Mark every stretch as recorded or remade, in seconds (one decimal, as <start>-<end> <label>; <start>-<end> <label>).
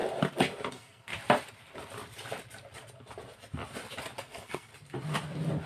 0.0-0.7 recorded; 0.7-1.1 remade; 1.1-4.2 recorded; 4.2-4.7 remade; 4.7-5.7 recorded